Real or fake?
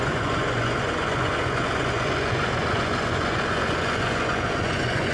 fake